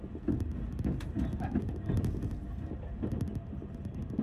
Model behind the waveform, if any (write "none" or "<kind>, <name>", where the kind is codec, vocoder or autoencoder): none